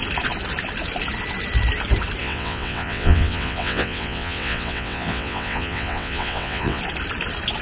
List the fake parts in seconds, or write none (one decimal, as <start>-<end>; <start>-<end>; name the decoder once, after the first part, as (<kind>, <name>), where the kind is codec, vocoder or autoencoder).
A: 2.2-6.8 (vocoder, WaveNeXt)

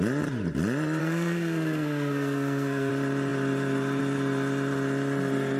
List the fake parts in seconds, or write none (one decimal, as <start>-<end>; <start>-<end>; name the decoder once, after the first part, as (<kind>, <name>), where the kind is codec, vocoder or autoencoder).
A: 1.0-2.9 (codec, SNAC)